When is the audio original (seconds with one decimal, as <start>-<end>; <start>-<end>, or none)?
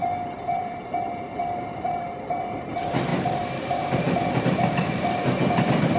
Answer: none